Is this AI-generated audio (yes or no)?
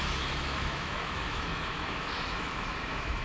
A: yes